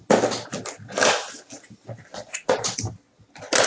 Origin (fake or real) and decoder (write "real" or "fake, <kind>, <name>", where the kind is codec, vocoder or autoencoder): real